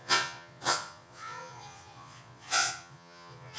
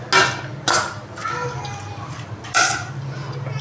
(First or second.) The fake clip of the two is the first